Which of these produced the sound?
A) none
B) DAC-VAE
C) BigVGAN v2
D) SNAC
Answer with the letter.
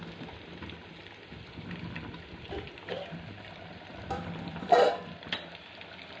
C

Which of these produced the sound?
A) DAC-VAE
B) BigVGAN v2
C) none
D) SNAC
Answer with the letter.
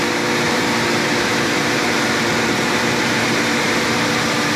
B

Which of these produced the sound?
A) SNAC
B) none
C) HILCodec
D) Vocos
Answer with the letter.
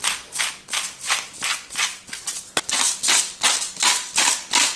B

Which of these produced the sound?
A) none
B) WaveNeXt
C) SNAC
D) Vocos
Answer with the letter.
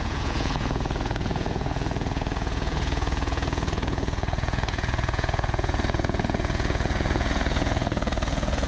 D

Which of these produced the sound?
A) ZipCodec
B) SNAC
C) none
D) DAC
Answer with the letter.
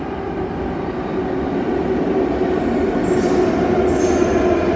C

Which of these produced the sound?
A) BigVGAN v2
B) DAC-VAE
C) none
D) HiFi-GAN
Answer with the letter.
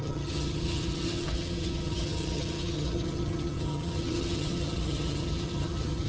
D